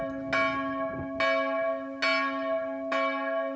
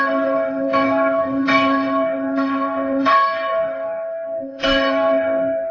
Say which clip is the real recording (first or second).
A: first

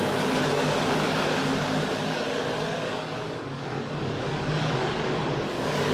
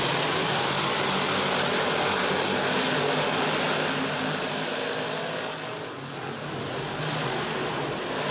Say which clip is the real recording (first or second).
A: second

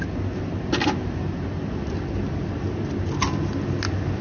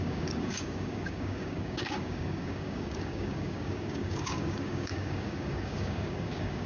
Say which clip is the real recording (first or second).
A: first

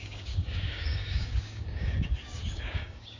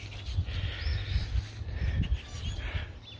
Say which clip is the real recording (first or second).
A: second